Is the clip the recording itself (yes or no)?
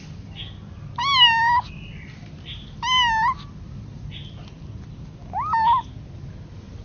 yes